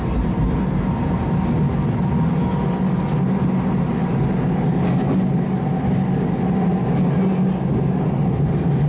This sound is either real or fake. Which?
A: real